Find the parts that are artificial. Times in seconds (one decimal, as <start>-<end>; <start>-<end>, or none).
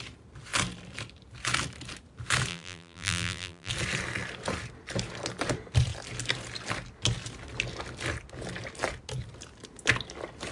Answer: 2.5-3.7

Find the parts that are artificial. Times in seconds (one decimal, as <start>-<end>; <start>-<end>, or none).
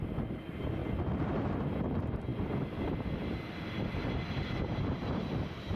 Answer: none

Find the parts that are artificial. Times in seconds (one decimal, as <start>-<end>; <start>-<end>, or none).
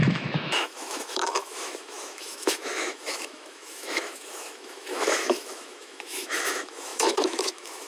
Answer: 0.0-7.9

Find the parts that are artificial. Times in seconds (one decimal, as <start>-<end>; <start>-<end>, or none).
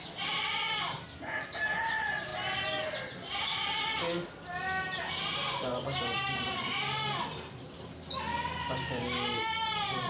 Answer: none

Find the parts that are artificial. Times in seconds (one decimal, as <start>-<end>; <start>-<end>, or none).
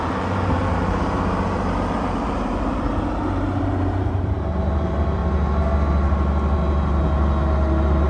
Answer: 0.0-5.2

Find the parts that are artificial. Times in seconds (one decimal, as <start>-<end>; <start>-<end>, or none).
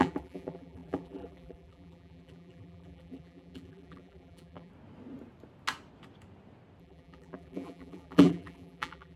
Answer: 0.0-4.7; 6.8-9.2